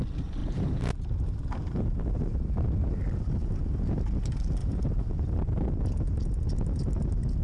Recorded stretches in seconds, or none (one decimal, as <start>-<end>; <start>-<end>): 0.0-0.4; 3.0-4.6; 5.4-7.4